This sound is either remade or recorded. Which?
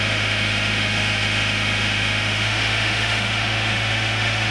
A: remade